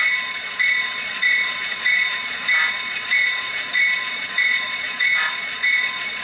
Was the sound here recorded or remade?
remade